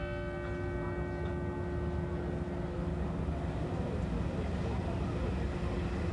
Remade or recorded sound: recorded